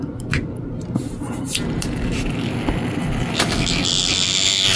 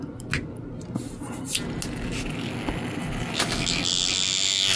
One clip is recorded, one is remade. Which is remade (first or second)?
first